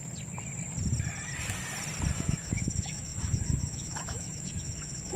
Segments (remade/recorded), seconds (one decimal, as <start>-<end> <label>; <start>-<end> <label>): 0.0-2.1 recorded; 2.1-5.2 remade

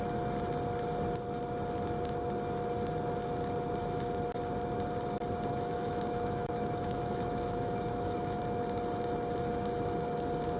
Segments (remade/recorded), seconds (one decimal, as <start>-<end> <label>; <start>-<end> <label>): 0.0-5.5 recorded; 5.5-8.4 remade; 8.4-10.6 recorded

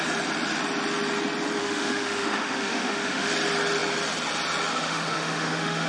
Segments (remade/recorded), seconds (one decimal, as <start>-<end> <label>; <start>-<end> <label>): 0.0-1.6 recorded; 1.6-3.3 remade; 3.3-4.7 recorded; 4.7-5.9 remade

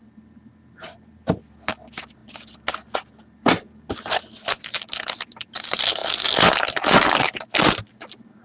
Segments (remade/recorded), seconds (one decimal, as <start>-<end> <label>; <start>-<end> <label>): 0.0-8.4 recorded

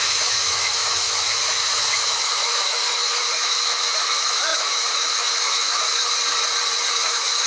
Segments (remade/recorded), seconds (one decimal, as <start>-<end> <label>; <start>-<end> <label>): 0.0-6.0 remade; 6.0-6.9 recorded; 6.9-7.5 remade